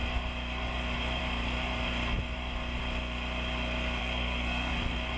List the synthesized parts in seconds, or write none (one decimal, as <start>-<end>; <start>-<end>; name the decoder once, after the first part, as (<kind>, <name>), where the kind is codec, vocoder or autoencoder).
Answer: 4.0-4.7 (codec, SNAC)